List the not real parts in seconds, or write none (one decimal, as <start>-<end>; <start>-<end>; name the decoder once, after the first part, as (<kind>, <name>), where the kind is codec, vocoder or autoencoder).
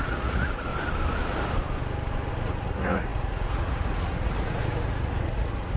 0.0-0.7 (vocoder, Vocos); 2.3-5.8